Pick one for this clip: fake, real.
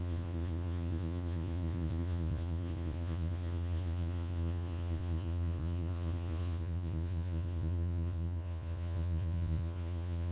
fake